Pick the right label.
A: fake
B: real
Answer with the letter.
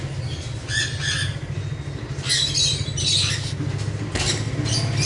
B